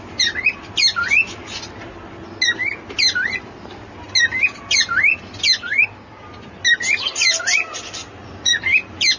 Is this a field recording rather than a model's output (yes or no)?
yes